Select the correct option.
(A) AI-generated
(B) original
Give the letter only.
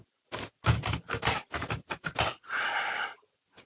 B